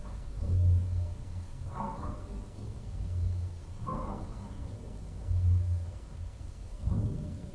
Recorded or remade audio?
remade